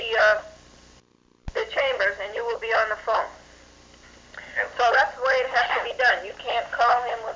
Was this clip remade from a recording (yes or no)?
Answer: no